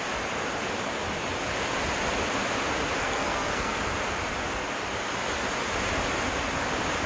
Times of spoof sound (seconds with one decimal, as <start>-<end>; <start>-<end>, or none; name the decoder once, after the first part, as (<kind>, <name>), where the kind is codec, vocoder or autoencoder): 3.0-3.8 (codec, SNAC)